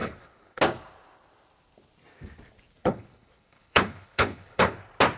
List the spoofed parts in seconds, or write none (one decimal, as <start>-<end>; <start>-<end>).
0.0-0.6; 2.8-4.8